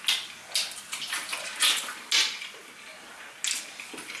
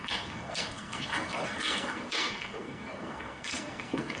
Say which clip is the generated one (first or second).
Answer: second